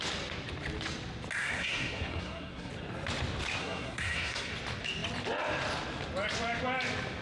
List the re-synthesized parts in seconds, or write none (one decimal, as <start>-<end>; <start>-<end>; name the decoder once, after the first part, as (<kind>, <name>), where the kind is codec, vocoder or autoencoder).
1.4-2.7 (codec, SNAC); 3.6-4.5